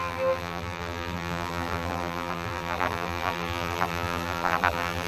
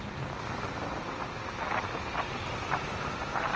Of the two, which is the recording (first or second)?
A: second